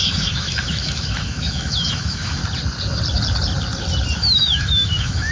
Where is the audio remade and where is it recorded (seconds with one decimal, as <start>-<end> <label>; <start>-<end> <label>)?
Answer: 0.0-2.4 remade; 2.4-4.2 recorded; 4.2-5.3 remade